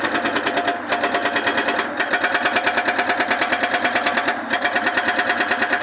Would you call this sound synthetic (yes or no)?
no